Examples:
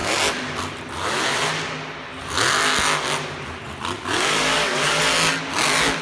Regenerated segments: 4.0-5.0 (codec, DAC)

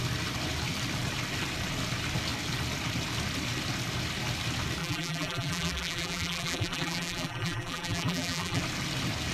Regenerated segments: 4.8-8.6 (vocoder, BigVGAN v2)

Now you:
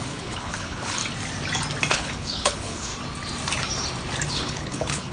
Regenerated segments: 0.0-1.0 (codec, HILCodec); 1.9-2.9; 4.3-5.1